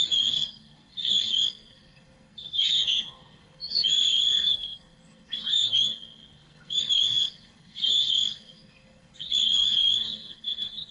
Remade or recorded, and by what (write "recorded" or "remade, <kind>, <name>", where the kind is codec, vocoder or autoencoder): remade, codec, SNAC